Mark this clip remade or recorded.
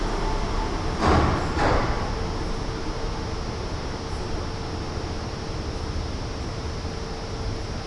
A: recorded